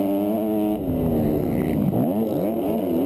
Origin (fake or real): real